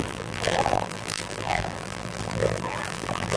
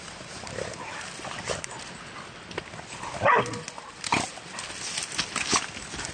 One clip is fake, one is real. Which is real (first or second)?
second